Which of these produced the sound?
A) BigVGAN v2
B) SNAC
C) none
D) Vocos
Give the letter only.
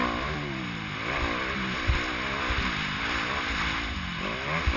C